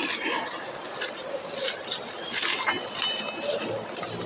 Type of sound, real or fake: fake